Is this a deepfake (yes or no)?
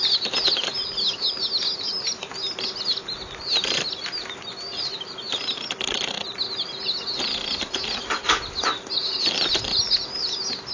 no